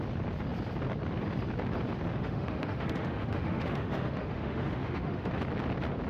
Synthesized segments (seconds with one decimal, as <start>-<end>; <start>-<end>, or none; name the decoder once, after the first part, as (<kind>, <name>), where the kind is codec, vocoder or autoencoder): 2.2-5.3 (autoencoder, DAC-VAE)